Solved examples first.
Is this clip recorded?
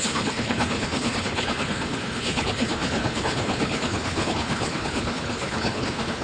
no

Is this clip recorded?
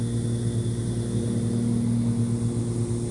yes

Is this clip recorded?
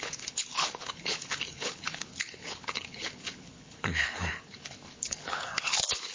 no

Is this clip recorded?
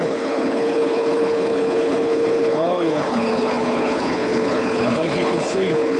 no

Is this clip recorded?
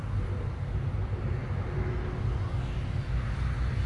yes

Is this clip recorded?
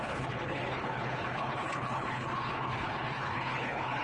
no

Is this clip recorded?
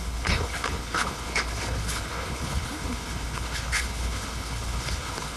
no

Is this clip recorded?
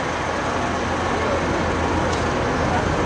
yes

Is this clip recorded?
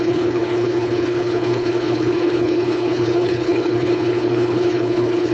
no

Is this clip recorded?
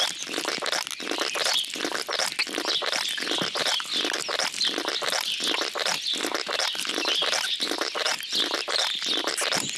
yes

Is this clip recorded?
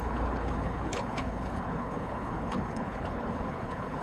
no